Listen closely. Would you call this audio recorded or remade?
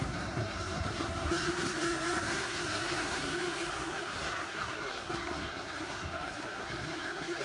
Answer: remade